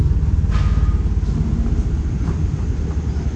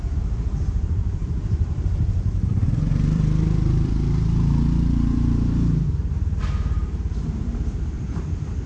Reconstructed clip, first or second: second